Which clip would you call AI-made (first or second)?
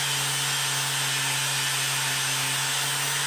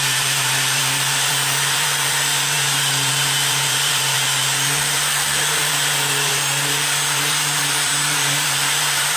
second